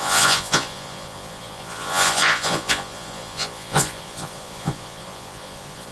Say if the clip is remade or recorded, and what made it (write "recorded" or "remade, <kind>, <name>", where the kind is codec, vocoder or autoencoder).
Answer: remade, vocoder, Vocos